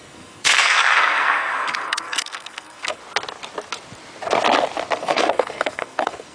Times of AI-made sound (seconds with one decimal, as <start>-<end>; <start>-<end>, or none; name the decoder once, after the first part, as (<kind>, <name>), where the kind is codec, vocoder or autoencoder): 0.0-3.0 (codec, SNAC); 5.0-6.3